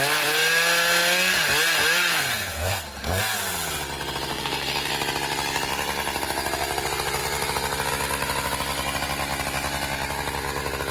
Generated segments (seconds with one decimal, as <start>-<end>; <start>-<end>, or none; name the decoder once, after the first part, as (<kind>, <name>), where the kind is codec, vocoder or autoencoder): 2.1-3.2 (codec, SNAC); 4.3-4.9